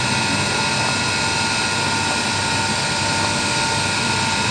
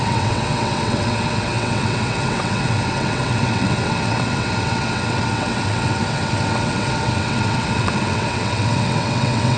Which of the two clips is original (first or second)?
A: first